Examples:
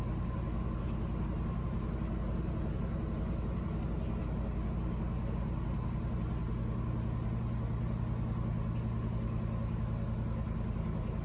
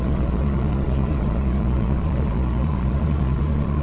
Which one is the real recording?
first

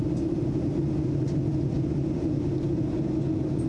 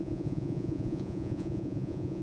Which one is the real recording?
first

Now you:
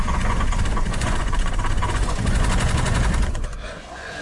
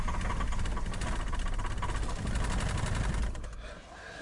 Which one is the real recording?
second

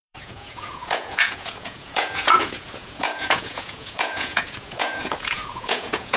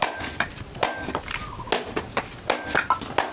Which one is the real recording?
second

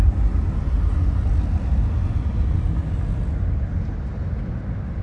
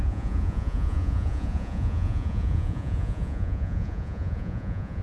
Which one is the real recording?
first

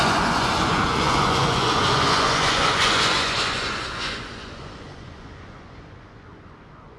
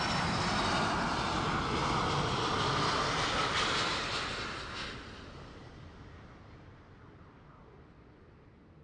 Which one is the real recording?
second